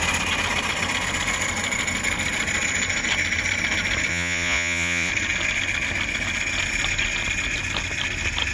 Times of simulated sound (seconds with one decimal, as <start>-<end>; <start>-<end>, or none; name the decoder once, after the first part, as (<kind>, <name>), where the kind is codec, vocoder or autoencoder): 4.1-5.1 (vocoder, Vocos)